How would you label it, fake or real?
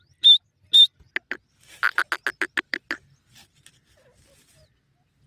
real